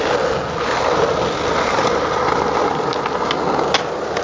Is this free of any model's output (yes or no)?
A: yes